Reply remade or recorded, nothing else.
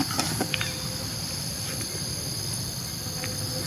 recorded